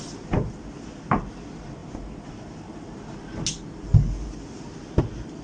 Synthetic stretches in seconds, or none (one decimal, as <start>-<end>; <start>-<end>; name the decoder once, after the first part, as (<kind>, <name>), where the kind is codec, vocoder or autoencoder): none